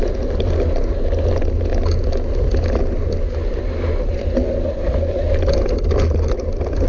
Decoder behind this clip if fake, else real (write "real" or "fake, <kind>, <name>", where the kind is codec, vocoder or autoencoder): real